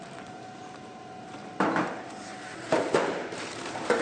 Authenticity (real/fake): fake